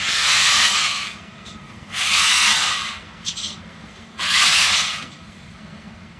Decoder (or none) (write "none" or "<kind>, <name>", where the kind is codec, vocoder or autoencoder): codec, SNAC